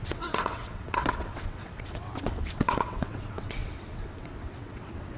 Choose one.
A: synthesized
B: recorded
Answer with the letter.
A